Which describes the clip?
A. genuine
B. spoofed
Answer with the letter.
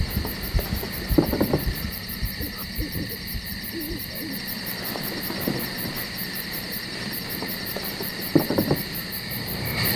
B